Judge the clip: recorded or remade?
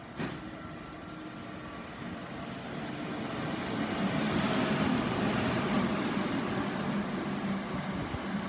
recorded